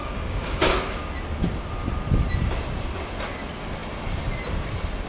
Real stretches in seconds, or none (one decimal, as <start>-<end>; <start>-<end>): 0.7-5.1